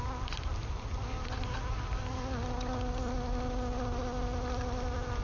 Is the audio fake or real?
real